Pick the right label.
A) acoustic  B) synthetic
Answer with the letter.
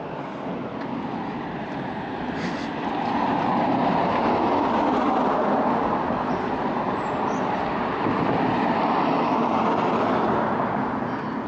A